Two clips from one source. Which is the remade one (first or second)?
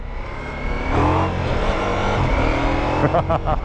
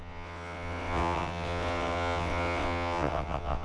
second